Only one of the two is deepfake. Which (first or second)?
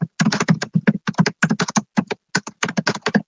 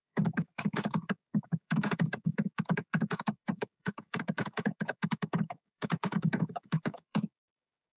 second